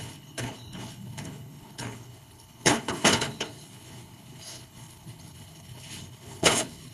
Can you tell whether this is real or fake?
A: fake